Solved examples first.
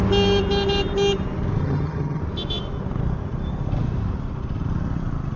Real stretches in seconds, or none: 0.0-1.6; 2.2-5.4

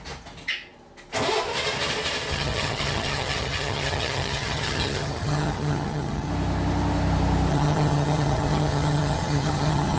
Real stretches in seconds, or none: 0.0-2.3; 6.3-7.5

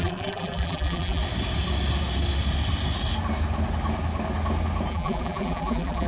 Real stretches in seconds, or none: 1.2-4.9

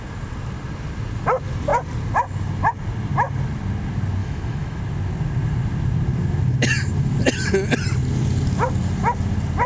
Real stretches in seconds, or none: 0.0-4.2; 4.8-9.7

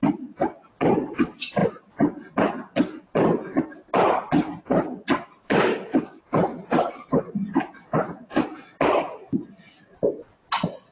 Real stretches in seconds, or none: 0.0-5.7; 6.2-10.9

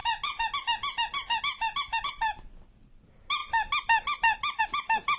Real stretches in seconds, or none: 0.0-5.2

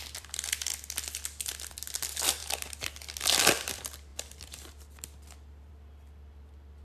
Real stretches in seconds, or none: 0.7-1.5; 2.4-3.2

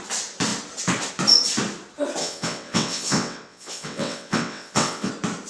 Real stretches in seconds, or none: 0.0-2.2; 5.1-5.5